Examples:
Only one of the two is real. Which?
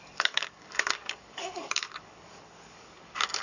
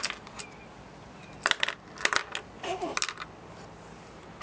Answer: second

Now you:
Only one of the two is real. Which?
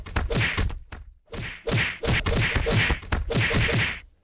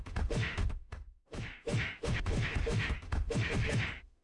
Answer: first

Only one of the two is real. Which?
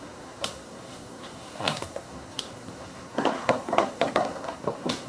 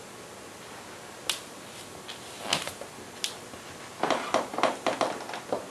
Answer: second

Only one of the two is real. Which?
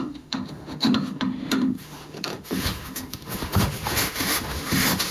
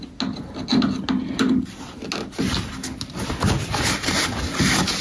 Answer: second